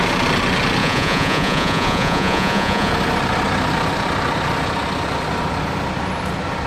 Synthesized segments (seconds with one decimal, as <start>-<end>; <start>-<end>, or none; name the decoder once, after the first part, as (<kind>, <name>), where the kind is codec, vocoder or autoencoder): 0.8-2.9 (vocoder, Vocos)